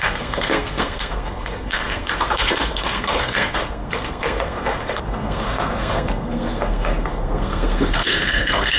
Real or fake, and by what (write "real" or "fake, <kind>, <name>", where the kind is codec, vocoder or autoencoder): fake, codec, SNAC